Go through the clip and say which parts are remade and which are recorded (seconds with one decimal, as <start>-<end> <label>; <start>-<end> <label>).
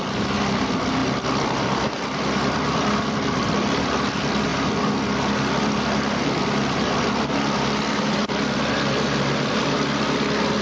0.0-1.0 recorded; 1.0-3.8 remade; 3.8-10.6 recorded